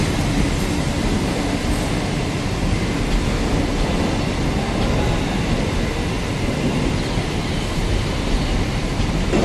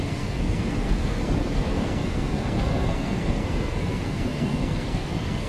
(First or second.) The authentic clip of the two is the first